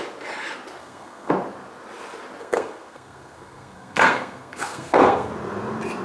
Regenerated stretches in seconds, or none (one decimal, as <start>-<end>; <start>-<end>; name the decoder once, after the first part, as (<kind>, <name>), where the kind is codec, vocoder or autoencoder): 0.8-1.3 (codec, SNAC); 2.4-5.3